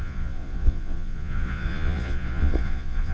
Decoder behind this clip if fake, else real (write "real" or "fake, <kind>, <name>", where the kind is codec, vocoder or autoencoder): fake, vocoder, Vocos